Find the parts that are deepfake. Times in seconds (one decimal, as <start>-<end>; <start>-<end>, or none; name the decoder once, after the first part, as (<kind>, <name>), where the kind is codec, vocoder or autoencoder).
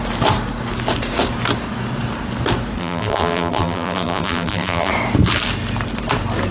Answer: 2.8-4.9 (vocoder, BigVGAN v2)